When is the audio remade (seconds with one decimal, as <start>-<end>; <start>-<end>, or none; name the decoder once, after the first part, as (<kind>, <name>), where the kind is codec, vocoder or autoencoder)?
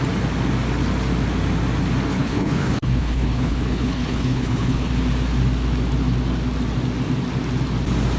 2.1-4.9 (codec, HILCodec)